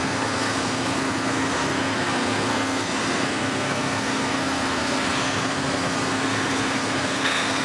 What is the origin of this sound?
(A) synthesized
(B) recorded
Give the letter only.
A